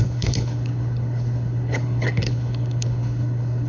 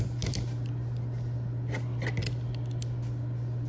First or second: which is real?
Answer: second